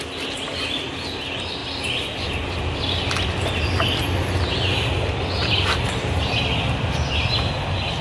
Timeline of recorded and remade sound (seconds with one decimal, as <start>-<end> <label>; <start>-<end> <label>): 0.0-8.0 recorded